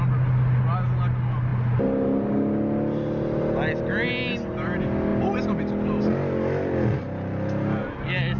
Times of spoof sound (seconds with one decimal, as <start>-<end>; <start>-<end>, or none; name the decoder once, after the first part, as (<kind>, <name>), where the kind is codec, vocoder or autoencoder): none